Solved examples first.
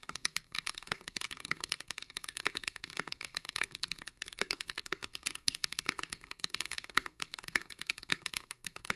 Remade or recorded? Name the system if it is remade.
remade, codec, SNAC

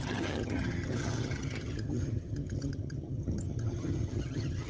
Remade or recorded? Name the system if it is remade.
remade, vocoder, HiFi-GAN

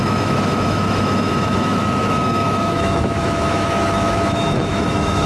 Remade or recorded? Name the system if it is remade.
remade, autoencoder, DAC-VAE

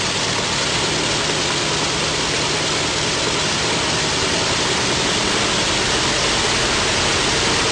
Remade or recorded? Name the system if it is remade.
recorded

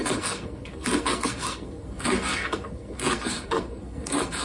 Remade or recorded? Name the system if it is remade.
remade, codec, SNAC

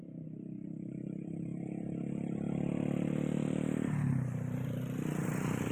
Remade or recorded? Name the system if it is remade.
remade, vocoder, BigVGAN v2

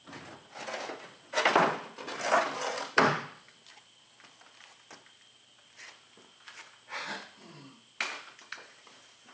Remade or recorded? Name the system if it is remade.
recorded